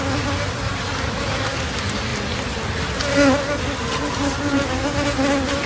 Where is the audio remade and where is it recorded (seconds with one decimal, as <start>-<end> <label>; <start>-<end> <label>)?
0.0-5.7 recorded